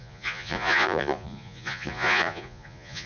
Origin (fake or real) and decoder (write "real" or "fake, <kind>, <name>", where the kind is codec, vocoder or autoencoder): fake, vocoder, Vocos